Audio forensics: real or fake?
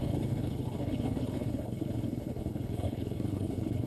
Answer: fake